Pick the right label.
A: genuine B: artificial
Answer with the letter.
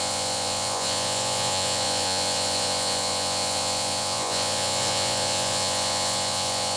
B